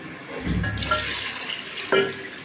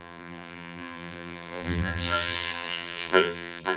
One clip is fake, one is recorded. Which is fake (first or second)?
second